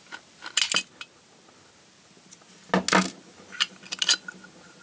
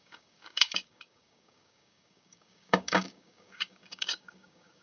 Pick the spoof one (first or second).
second